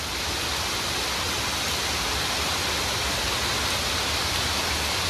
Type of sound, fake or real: real